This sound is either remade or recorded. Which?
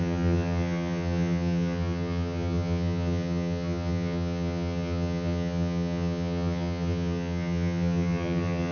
remade